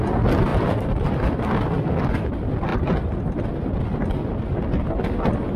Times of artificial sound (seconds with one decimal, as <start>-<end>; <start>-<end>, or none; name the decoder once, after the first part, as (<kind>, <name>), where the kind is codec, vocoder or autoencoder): 0.5-1.3 (vocoder, BigVGAN v2)